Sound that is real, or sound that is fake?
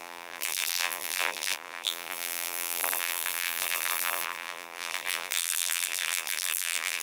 fake